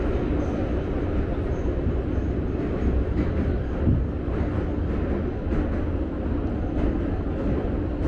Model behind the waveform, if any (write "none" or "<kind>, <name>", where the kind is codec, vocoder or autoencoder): none